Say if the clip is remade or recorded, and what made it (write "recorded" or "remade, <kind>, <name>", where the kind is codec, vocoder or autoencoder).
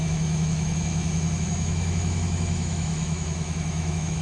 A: remade, autoencoder, DAC-VAE